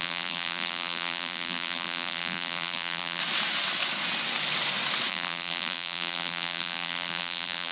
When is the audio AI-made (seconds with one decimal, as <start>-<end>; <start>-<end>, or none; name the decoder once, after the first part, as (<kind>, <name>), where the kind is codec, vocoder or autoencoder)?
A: 0.0-3.2 (vocoder, BigVGAN v2); 5.1-7.7